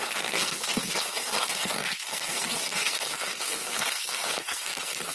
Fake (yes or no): yes